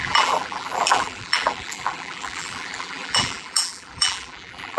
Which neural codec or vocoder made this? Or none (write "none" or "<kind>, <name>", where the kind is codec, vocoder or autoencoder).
vocoder, BigVGAN v2